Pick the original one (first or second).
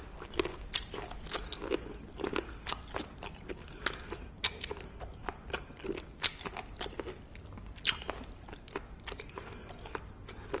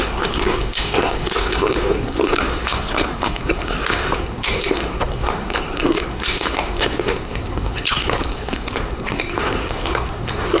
first